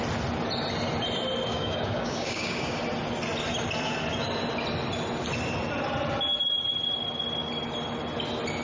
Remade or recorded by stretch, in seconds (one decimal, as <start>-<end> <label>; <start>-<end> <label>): 0.0-1.5 recorded; 1.5-2.8 remade; 2.8-8.6 recorded